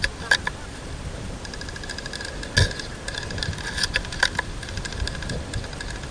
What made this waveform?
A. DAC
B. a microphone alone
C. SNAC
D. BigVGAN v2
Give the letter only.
B